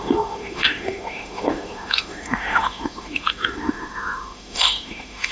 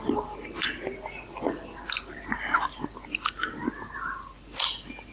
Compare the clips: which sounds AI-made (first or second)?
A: first